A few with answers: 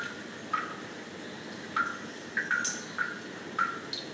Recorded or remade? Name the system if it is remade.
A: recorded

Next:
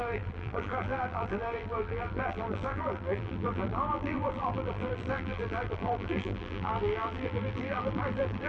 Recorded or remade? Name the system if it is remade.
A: remade, vocoder, BigVGAN v2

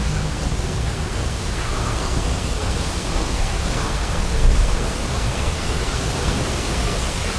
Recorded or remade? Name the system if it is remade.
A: remade, codec, SNAC